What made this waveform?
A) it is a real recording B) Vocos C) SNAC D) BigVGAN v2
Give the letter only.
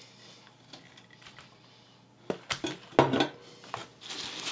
A